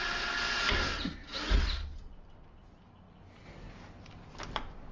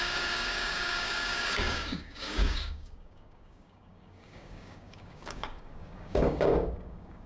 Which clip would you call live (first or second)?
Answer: first